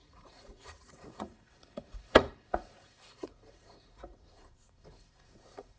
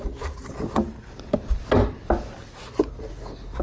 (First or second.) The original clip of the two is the second